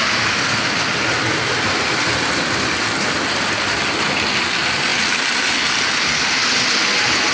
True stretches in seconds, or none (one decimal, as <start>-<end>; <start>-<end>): 0.0-7.3